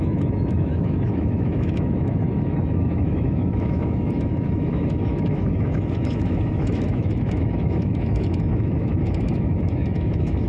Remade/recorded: remade